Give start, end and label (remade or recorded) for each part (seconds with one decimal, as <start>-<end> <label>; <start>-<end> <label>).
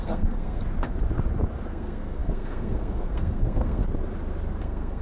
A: 0.0-0.6 remade; 0.6-1.7 recorded; 1.7-3.8 remade; 3.8-4.6 recorded; 4.6-5.0 remade